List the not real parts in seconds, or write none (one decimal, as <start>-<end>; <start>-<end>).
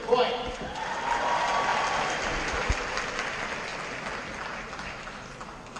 none